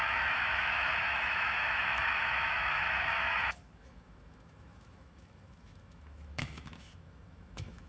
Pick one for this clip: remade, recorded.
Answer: remade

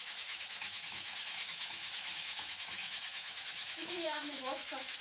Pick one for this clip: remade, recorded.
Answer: remade